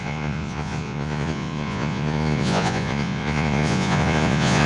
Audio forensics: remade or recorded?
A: remade